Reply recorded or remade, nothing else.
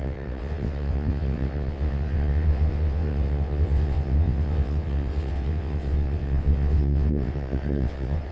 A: remade